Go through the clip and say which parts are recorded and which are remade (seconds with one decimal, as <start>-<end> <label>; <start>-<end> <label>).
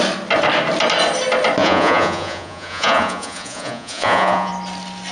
0.0-1.6 recorded; 1.6-4.5 remade; 4.5-5.1 recorded